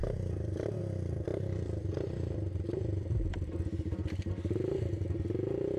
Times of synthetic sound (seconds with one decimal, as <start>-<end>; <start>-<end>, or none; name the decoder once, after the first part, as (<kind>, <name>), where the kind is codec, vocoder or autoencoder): 0.0-0.8 (vocoder, BigVGAN v2); 1.3-4.3